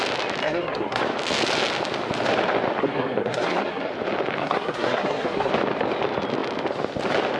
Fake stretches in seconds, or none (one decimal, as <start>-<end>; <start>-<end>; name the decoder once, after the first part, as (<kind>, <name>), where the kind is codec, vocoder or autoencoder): 0.4-1.0 (codec, SNAC); 2.8-3.9; 4.4-5.5